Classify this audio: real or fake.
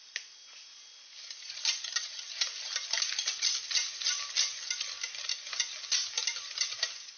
real